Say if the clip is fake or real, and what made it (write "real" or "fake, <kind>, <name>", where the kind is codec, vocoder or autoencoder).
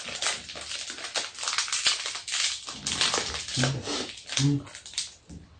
real